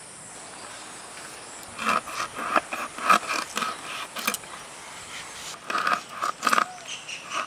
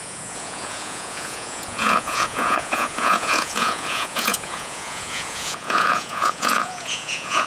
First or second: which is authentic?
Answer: first